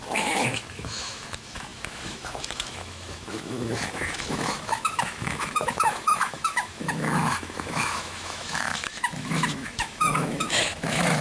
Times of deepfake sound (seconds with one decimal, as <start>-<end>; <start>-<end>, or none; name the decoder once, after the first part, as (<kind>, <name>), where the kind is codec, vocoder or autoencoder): 0.0-11.2 (autoencoder, DAC-VAE)